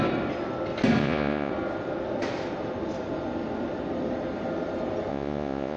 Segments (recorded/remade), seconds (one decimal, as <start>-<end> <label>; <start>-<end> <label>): 0.0-1.0 recorded; 1.0-1.5 remade; 1.5-5.1 recorded; 5.1-5.8 remade